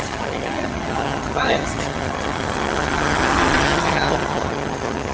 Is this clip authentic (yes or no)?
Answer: no